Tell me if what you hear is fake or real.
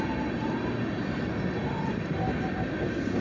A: real